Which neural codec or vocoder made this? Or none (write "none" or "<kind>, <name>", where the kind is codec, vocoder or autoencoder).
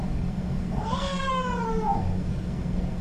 codec, SNAC